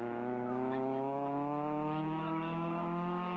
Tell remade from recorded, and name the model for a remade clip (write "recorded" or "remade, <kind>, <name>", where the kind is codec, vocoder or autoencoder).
remade, autoencoder, DAC-VAE